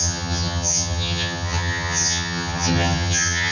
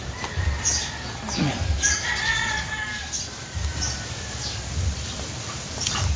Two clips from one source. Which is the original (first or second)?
second